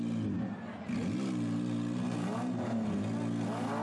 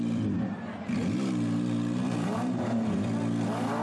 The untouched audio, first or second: first